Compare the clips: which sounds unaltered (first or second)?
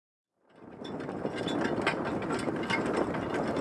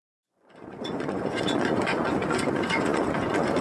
first